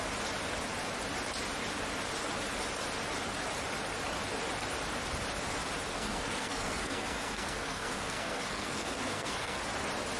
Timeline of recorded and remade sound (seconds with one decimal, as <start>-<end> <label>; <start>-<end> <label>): 0.0-5.9 recorded; 5.9-9.6 remade; 9.6-10.2 recorded